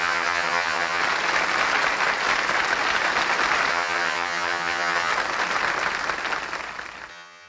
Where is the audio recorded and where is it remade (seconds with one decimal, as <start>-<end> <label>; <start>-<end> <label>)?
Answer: 0.0-1.0 remade; 1.0-3.7 recorded; 3.7-5.1 remade; 5.1-7.1 recorded; 7.1-7.5 remade